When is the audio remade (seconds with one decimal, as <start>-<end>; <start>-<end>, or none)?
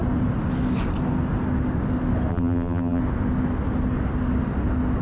2.3-3.0